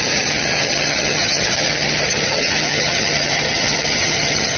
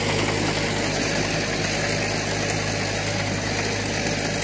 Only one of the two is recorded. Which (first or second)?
second